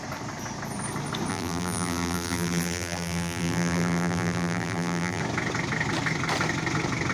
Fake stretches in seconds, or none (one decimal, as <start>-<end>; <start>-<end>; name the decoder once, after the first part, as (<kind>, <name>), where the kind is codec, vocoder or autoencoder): 1.3-5.2 (vocoder, BigVGAN v2)